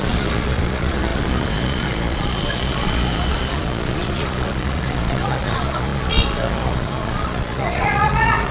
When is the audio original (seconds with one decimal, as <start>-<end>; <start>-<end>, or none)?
none